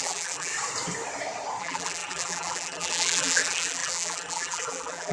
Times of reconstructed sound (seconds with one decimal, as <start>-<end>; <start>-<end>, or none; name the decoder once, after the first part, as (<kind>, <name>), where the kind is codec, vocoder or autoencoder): 0.0-0.5 (vocoder, BigVGAN v2); 1.6-5.1